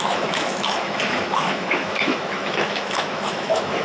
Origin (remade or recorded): remade